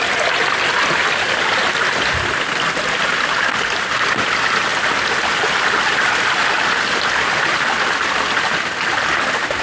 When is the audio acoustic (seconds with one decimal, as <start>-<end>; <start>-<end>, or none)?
0.0-9.6